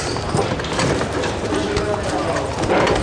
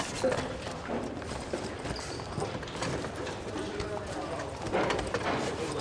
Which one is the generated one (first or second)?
second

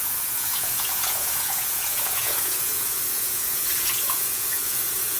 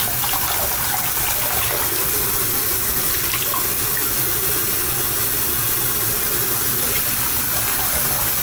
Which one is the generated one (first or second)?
first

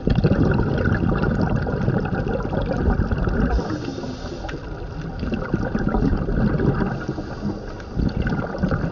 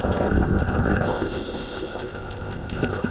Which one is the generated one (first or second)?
second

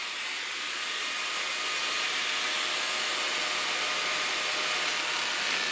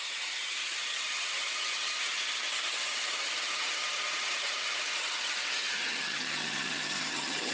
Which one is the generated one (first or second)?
second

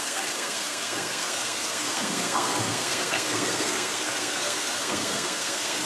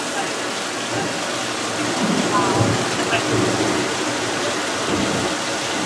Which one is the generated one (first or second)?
first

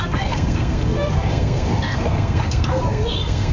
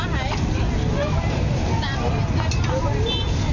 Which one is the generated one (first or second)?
first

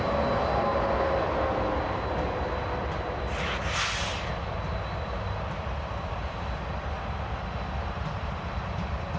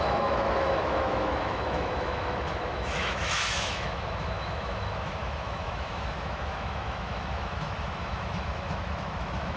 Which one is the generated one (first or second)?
second